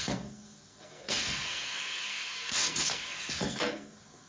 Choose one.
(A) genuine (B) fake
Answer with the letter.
B